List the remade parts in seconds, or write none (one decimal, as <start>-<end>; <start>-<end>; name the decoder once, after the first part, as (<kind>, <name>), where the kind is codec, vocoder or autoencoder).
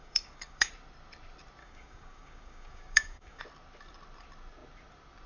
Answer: 0.0-0.7 (codec, DAC); 1.6-3.4